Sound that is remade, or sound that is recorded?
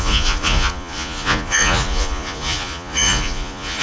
remade